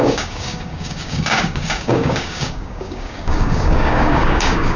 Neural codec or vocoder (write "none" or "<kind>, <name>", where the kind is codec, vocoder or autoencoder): codec, DAC